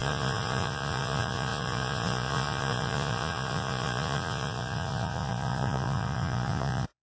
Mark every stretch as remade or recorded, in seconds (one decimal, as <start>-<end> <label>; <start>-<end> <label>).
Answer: 0.0-7.0 remade